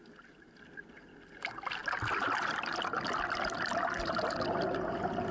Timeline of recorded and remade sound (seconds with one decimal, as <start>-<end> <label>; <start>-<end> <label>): 0.0-5.3 recorded